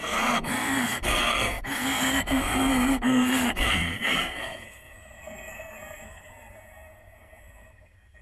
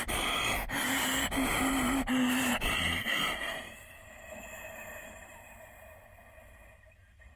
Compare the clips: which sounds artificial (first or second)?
first